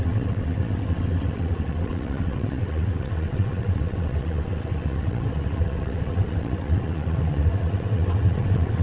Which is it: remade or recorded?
remade